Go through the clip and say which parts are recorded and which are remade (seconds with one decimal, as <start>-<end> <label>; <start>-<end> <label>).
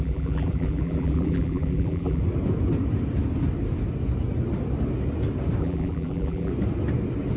0.0-2.2 remade; 2.2-5.6 recorded; 5.6-6.5 remade; 6.5-7.4 recorded